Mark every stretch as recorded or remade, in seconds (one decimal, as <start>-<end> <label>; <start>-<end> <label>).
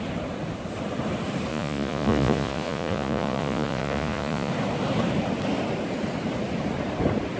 0.0-1.5 recorded; 1.5-4.5 remade; 4.5-7.4 recorded